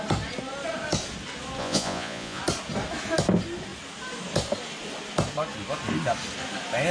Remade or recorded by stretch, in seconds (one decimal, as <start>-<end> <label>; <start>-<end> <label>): 0.0-1.6 recorded; 1.6-2.4 remade; 2.4-6.9 recorded